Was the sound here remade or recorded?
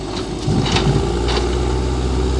recorded